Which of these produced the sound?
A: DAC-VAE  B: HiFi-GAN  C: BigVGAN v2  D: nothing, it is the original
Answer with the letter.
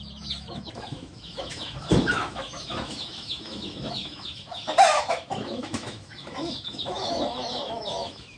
A